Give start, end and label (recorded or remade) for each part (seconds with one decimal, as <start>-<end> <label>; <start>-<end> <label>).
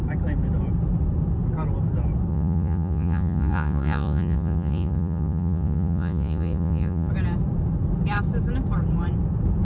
0.0-2.3 recorded; 2.3-7.1 remade; 7.1-9.6 recorded